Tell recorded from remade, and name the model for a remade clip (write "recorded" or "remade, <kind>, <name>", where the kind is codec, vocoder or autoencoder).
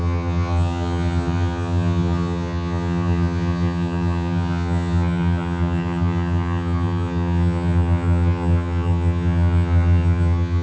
remade, vocoder, HiFi-GAN